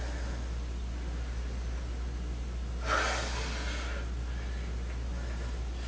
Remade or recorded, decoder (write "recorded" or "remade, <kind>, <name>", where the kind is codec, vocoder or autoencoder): recorded